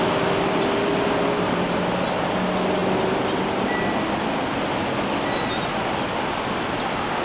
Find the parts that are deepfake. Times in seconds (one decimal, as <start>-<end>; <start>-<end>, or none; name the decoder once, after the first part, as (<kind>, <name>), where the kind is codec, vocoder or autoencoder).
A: none